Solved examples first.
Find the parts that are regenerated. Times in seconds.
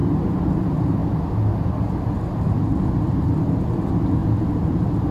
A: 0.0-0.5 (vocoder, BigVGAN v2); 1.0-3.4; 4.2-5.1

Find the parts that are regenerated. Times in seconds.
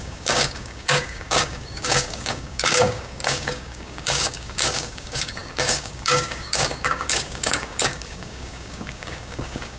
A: 0.0-9.8 (codec, DAC)